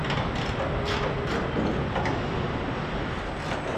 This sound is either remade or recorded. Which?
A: recorded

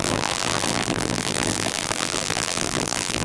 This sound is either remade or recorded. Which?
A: remade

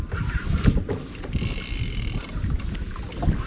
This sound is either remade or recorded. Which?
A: recorded